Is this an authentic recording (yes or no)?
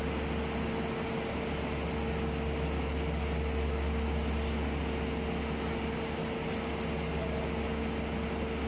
yes